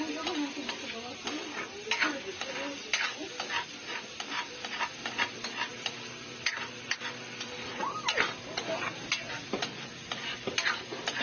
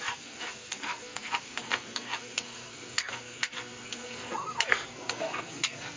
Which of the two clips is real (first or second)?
first